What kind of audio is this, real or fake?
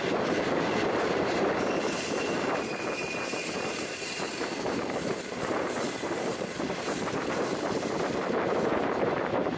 fake